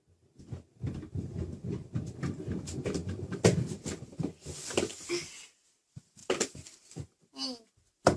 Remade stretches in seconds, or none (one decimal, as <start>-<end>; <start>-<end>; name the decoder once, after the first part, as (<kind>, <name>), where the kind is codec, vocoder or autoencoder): none